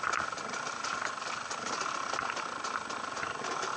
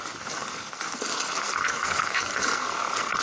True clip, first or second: first